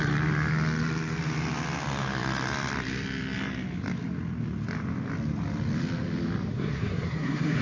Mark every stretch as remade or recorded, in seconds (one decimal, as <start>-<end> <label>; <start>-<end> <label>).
0.0-6.5 recorded; 6.5-7.6 remade